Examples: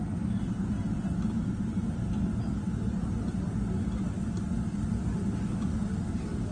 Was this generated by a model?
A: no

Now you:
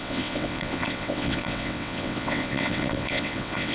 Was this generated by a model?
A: yes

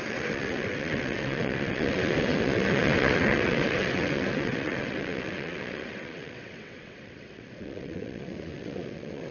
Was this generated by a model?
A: yes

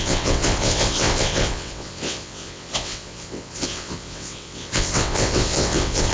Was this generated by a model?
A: yes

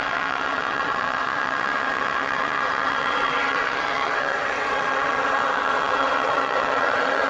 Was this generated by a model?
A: yes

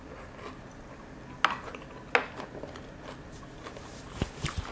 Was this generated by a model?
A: no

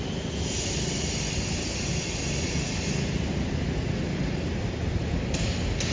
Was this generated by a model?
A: no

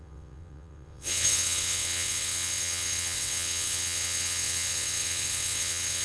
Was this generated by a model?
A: yes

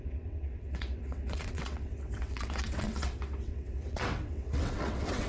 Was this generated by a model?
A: yes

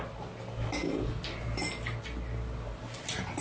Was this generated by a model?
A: no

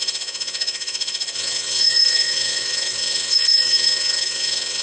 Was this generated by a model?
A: yes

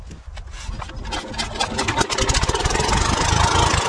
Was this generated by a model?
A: no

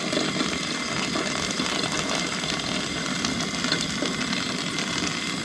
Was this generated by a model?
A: no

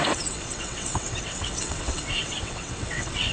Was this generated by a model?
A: yes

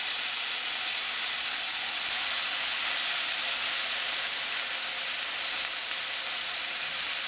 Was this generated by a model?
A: no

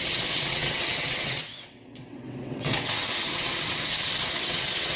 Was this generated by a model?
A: yes